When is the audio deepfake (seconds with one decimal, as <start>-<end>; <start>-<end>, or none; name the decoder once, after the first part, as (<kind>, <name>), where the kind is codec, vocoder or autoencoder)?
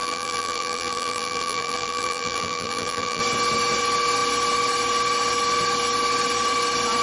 0.0-3.2 (vocoder, BigVGAN v2)